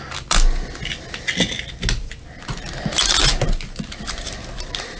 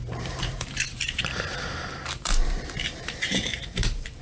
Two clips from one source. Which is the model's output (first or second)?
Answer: second